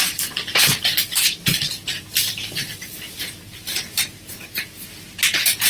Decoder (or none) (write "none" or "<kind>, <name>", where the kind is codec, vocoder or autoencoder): vocoder, BigVGAN v2